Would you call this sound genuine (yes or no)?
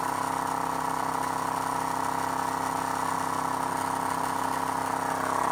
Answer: yes